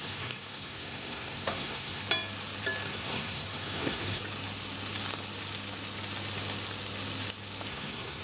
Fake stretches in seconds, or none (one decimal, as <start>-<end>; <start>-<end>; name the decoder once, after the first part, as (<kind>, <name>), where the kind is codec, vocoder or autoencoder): 0.0-2.0 (codec, SNAC); 2.9-4.2; 7.7-8.2